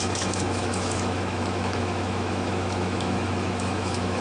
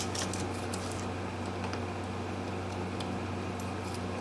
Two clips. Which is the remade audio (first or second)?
first